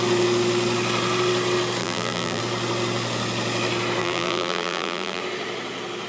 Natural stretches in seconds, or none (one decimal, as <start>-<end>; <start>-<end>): 0.0-1.8; 2.4-4.0; 5.2-6.1